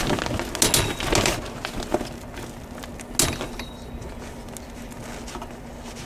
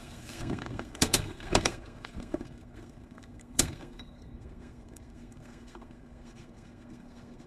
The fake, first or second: second